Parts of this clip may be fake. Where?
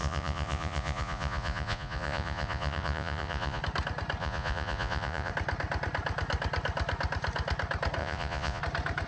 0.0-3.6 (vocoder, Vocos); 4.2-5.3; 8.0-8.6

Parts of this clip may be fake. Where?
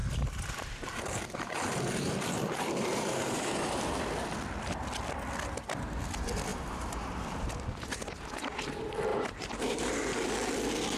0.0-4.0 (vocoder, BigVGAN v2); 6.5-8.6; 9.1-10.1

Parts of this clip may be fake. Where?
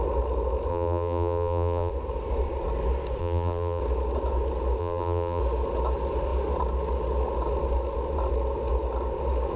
0.7-1.9 (vocoder, BigVGAN v2); 3.2-3.8; 4.8-5.4